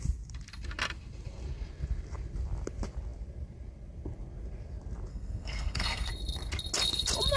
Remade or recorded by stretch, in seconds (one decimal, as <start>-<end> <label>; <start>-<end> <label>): 0.0-5.1 recorded; 5.1-6.1 remade; 6.1-7.4 recorded